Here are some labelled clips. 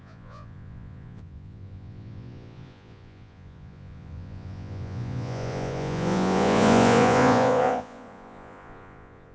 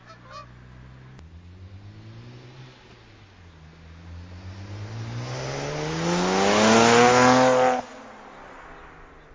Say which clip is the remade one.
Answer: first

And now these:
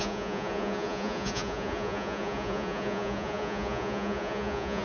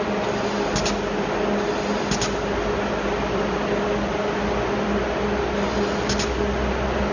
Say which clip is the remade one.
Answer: first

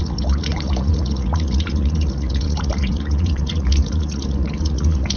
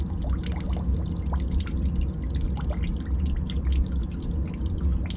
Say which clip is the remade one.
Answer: first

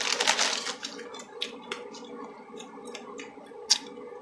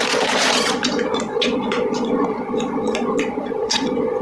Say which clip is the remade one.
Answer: second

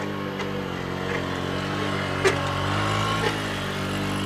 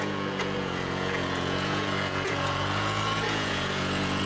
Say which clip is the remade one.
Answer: second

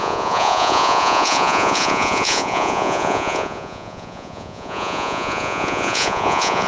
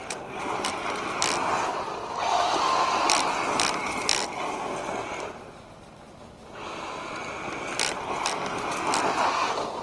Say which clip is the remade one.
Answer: first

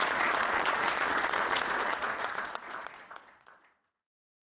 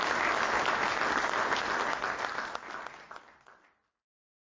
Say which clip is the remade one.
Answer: first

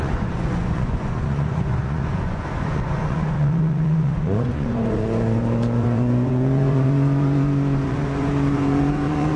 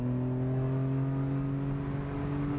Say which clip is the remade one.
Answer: first